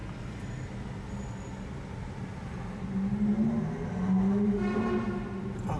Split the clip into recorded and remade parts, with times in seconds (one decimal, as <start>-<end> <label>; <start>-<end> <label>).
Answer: 0.0-5.8 recorded